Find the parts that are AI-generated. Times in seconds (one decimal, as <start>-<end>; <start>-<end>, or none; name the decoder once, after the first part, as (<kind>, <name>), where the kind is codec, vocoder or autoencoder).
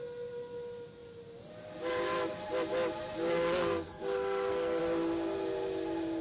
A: 3.3-4.8 (codec, SNAC)